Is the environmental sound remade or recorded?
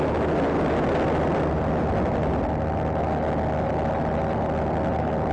recorded